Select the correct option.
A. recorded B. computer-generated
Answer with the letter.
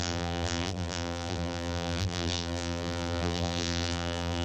B